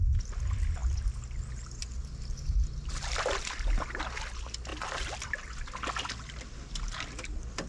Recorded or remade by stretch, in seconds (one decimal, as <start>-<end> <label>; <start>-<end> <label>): 0.0-4.7 recorded; 4.7-5.9 remade; 5.9-7.7 recorded